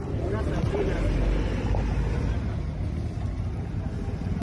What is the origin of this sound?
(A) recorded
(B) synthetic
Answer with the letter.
A